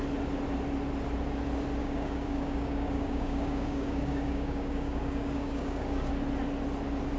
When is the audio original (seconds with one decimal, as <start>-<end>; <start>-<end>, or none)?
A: 0.0-1.8; 6.1-7.2